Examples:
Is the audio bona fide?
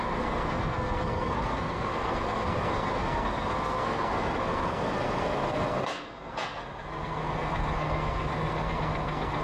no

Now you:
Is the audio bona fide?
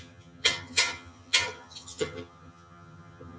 no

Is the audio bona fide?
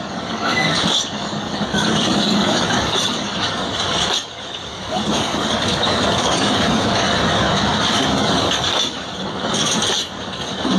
no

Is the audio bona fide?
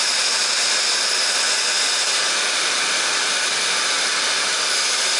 yes